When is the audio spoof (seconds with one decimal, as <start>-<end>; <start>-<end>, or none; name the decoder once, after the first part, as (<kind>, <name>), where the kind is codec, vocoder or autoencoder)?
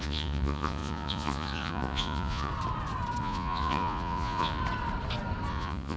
0.0-2.5 (vocoder, Vocos); 3.2-4.6; 5.5-6.0